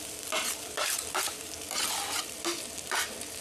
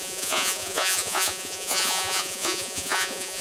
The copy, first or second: second